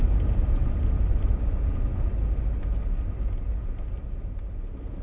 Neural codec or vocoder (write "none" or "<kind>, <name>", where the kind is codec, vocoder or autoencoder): none